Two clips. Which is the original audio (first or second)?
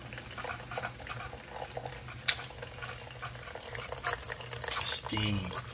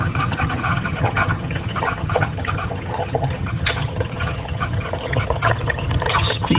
first